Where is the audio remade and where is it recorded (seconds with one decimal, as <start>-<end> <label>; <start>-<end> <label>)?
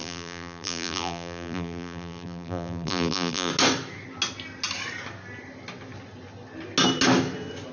0.0-3.5 remade; 3.5-7.7 recorded